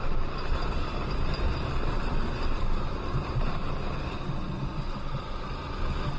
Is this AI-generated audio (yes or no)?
no